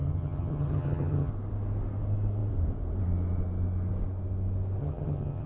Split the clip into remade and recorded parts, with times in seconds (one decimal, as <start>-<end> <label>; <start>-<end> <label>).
0.0-1.3 remade; 1.3-4.8 recorded; 4.8-5.5 remade

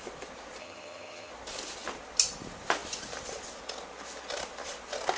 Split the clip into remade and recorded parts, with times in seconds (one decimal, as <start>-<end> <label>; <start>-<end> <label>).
0.0-0.6 recorded; 0.6-1.3 remade; 1.3-5.2 recorded

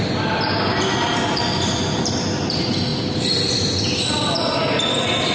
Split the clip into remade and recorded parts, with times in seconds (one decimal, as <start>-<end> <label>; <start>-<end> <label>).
0.0-5.3 recorded

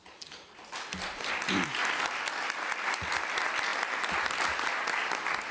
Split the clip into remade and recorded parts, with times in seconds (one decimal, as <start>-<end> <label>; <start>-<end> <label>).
0.0-5.5 recorded